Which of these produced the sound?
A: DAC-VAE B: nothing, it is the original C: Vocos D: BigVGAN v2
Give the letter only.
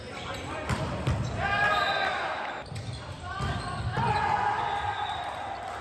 D